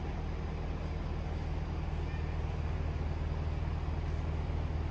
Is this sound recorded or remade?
recorded